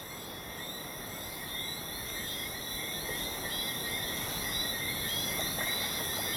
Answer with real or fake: real